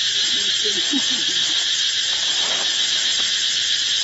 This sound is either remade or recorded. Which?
recorded